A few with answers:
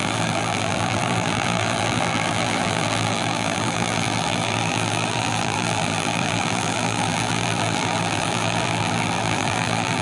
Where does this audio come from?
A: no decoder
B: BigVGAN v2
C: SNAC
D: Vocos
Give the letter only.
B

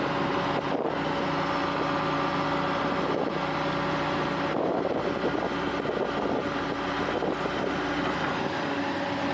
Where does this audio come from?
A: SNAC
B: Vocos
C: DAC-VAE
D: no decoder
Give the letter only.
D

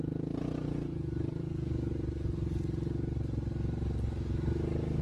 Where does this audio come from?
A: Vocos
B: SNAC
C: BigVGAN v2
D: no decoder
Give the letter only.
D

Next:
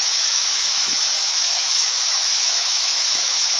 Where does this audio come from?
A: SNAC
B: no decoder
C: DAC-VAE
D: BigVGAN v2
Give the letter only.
C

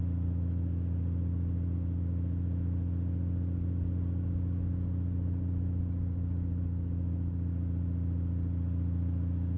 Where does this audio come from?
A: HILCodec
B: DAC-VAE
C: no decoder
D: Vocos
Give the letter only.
C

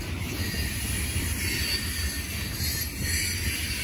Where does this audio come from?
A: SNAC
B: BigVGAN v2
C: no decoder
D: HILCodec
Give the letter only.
C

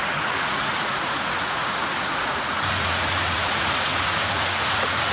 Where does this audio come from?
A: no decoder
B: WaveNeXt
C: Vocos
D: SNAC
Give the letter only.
C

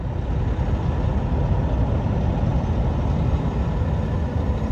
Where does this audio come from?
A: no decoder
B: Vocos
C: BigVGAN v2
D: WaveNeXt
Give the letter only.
A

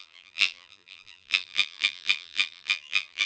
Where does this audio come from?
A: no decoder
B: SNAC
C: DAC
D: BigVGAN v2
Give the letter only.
D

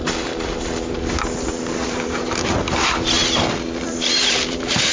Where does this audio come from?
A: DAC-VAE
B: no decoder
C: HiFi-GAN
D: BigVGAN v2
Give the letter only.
D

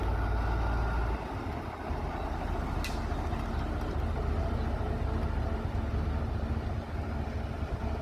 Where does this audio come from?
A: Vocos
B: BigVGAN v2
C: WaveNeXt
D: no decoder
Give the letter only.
D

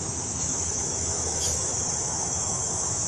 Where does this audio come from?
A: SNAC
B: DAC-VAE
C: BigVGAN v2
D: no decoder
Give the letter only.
B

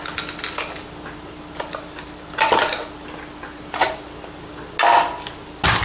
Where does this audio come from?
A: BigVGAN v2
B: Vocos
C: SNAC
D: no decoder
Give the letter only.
D